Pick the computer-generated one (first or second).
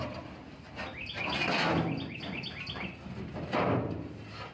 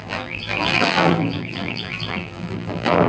second